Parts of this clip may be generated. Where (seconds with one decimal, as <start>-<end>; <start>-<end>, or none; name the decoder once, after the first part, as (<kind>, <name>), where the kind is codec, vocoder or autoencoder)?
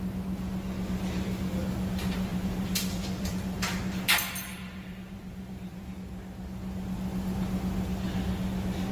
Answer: 2.3-3.8 (vocoder, BigVGAN v2); 4.5-5.9